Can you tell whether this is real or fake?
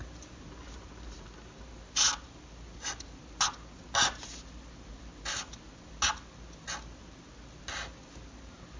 real